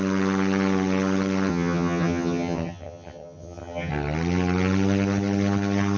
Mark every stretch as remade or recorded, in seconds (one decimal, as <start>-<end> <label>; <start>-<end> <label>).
0.0-1.5 recorded; 1.5-3.9 remade; 3.9-6.0 recorded